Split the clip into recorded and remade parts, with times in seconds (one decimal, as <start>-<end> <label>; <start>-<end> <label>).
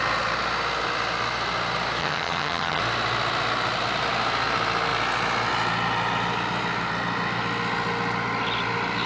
0.0-2.0 recorded; 2.0-2.8 remade; 2.8-9.1 recorded